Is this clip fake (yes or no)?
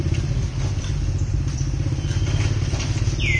no